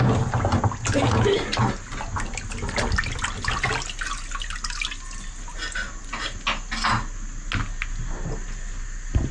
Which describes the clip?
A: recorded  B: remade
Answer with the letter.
A